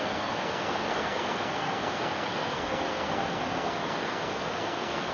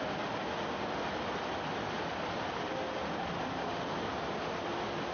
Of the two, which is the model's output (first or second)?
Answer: first